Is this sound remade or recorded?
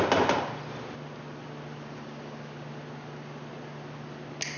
recorded